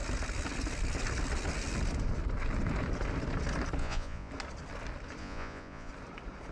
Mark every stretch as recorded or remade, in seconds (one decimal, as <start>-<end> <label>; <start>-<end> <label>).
0.0-3.8 recorded; 3.8-4.3 remade; 4.3-5.2 recorded; 5.2-5.9 remade; 5.9-6.5 recorded